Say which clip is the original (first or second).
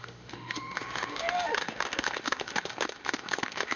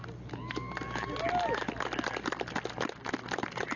second